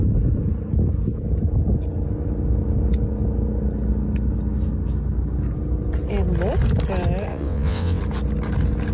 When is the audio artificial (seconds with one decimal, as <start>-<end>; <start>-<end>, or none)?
7.3-8.0